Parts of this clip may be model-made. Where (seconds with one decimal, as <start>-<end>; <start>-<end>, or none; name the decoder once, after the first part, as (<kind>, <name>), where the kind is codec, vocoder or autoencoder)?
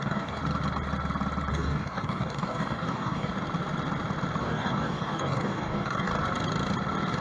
0.0-0.4 (codec, DAC); 1.5-3.3; 4.4-6.1